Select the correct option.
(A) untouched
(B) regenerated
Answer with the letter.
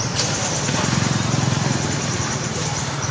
B